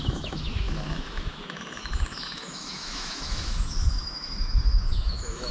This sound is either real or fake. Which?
fake